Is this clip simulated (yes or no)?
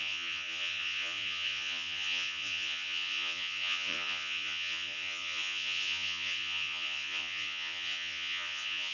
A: yes